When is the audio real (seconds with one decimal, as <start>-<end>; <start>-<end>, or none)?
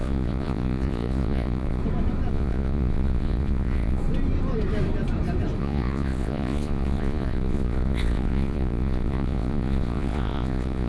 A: 1.8-2.3; 4.0-5.6